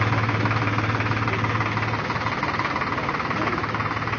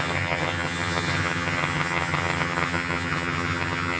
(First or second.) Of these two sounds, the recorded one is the first